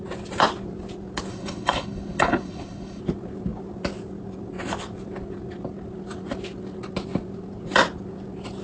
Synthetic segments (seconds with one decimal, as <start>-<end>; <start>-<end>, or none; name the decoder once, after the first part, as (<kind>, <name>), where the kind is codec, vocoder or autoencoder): 1.3-3.0 (codec, HILCodec)